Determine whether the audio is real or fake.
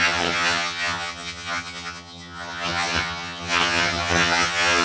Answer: fake